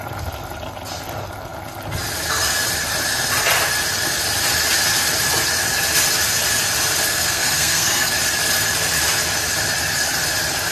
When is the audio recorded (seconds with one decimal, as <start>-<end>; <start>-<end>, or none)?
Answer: 0.0-7.1; 8.1-10.7